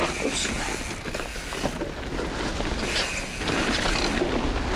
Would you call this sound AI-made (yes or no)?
no